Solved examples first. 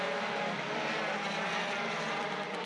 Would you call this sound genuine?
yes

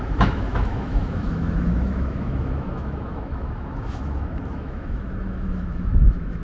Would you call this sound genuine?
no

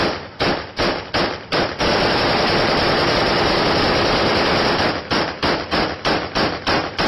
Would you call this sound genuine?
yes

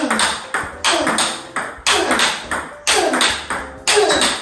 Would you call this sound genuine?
yes